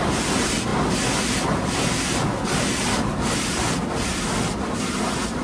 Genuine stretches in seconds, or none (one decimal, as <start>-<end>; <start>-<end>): 0.0-5.4